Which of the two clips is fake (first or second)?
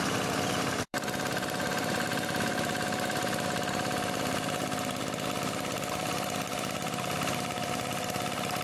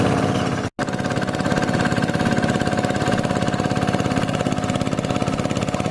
first